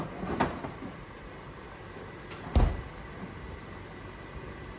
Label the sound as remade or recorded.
recorded